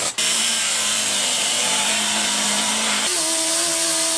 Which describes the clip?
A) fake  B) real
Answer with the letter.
A